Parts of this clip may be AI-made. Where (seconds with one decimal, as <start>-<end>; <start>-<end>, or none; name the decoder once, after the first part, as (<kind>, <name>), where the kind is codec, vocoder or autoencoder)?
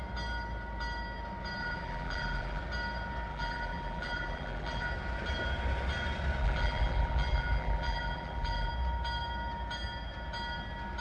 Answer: 1.6-2.6 (vocoder, BigVGAN v2); 3.3-4.9; 6.4-8.7